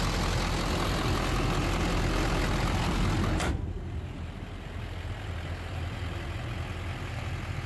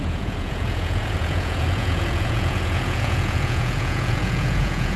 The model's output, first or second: second